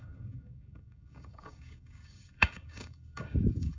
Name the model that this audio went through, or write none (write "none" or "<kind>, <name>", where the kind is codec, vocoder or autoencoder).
codec, DAC